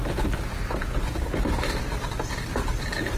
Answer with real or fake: real